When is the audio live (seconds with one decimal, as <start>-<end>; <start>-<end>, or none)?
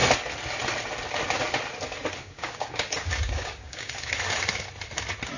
0.0-2.2; 4.1-5.4